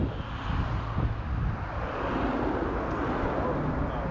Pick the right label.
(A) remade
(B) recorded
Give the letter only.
B